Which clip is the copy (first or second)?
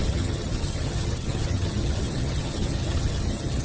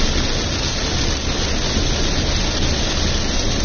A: first